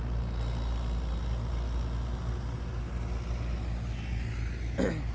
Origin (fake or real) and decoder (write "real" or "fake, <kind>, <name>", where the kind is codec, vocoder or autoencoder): real